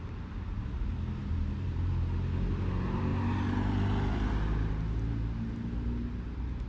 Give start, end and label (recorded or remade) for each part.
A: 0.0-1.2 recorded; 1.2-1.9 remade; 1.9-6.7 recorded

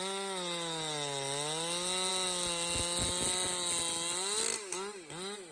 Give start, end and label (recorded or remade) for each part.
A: 0.0-5.5 recorded

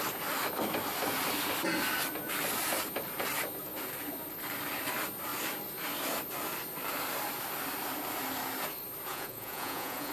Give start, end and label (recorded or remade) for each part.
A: 0.0-9.1 recorded; 9.1-10.1 remade

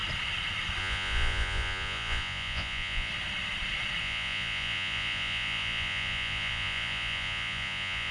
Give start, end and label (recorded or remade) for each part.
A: 0.0-0.8 recorded; 0.8-3.1 remade; 3.1-4.0 recorded; 4.0-8.1 remade

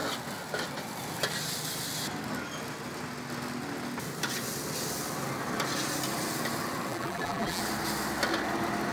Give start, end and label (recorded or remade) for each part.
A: 0.0-6.9 recorded; 6.9-7.6 remade; 7.6-8.9 recorded

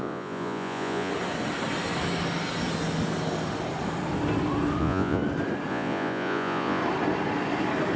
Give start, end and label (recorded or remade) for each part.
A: 0.0-1.1 remade; 1.1-4.8 recorded; 4.8-5.2 remade; 5.2-5.7 recorded; 5.7-6.8 remade; 6.8-8.0 recorded